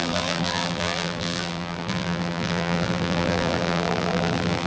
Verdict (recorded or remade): remade